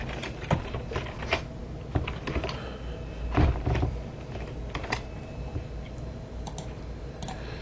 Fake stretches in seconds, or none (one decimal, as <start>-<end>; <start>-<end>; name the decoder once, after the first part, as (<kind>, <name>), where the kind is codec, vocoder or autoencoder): none

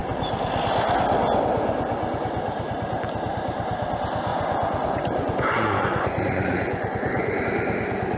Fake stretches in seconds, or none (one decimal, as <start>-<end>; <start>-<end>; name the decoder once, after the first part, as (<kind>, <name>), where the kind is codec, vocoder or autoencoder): 4.3-7.4 (vocoder, Vocos)